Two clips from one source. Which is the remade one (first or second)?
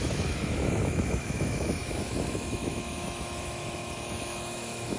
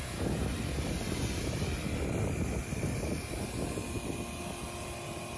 first